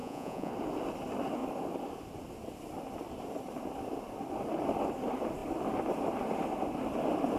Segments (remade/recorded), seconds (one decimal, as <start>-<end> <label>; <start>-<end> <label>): 0.0-0.5 remade; 0.5-7.4 recorded